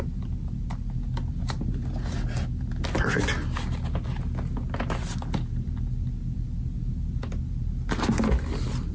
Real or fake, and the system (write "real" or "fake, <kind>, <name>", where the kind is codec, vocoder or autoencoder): real